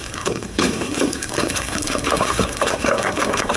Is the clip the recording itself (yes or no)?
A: no